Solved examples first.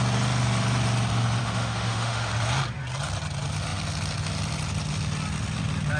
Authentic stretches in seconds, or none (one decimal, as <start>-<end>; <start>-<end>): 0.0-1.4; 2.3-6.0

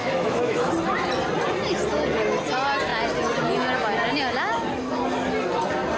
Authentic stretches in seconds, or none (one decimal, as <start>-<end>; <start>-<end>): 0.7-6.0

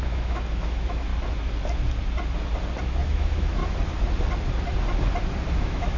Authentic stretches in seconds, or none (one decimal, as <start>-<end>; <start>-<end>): 1.1-2.8; 3.6-5.5

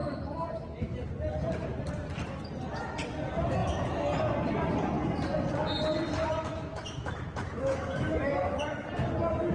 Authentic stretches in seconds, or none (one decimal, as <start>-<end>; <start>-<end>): 0.0-6.5; 8.6-9.5